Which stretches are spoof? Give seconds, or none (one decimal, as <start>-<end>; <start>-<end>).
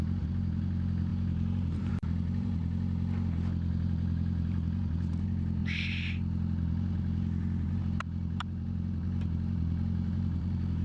0.0-2.6; 3.7-10.8